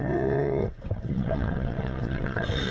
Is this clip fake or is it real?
fake